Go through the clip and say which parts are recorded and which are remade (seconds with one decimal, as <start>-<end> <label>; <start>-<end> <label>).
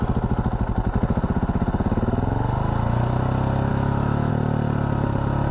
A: 0.0-3.7 recorded; 3.7-4.3 remade; 4.3-5.5 recorded